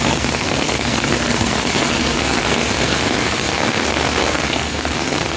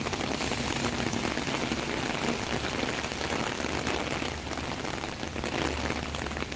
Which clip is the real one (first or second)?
second